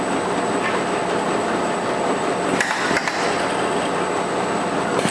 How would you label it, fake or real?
real